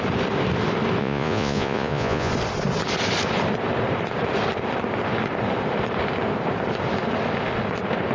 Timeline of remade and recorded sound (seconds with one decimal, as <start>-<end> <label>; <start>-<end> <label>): 0.0-1.0 recorded; 1.0-2.3 remade; 2.3-8.1 recorded